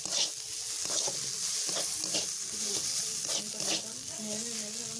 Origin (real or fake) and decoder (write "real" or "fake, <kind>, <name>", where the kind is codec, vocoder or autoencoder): real